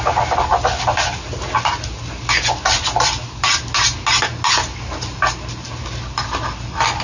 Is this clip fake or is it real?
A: real